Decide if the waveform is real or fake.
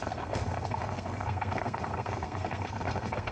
fake